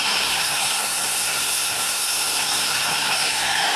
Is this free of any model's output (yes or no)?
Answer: no